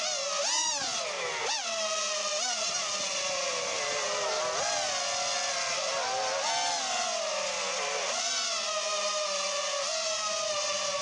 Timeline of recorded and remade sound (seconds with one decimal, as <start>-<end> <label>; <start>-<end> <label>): 0.0-11.0 recorded